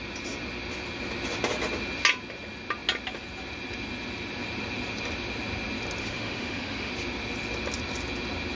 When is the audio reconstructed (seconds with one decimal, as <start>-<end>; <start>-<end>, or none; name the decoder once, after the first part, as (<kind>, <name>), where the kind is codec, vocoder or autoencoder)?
6.0-6.9 (autoencoder, DAC-VAE)